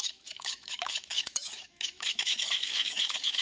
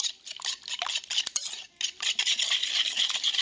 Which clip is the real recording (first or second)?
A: second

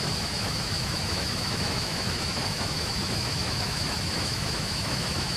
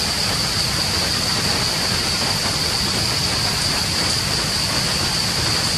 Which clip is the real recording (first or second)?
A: second